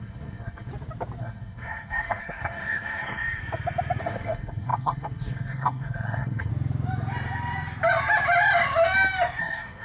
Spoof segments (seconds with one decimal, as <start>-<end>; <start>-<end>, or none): 0.0-0.7; 1.2-3.4; 4.0-6.5; 9.4-9.8